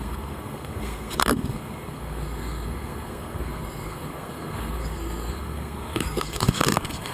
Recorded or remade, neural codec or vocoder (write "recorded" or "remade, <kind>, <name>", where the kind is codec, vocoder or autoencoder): remade, codec, SNAC